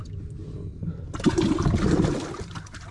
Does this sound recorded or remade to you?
recorded